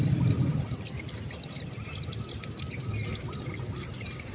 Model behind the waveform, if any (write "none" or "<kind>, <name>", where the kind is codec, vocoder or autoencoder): none